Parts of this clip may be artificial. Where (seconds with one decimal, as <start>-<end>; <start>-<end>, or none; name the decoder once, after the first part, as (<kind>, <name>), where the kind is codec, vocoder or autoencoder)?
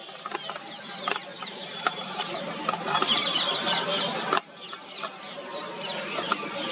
1.3-3.6 (vocoder, BigVGAN v2)